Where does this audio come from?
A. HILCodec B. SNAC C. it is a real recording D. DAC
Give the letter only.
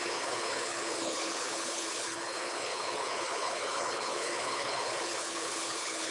A